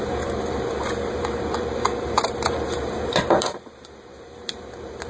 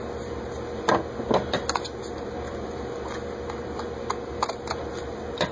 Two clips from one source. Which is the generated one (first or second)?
first